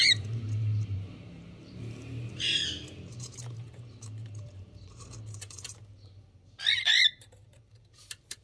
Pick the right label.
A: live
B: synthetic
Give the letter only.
B